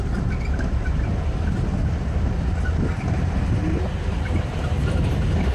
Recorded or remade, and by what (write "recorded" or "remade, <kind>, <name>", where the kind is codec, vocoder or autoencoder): recorded